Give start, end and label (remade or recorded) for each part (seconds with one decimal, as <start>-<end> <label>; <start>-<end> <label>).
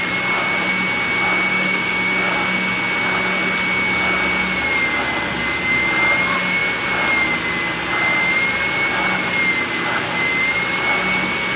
0.0-1.5 recorded; 1.5-2.3 remade; 2.3-11.6 recorded